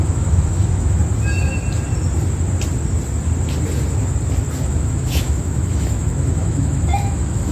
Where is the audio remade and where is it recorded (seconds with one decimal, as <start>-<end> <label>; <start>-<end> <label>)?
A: 0.0-1.0 remade; 1.0-4.7 recorded; 4.7-7.5 remade